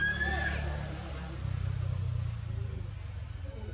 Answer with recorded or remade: recorded